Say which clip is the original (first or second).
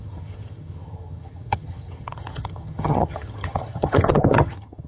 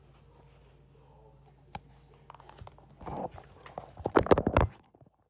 second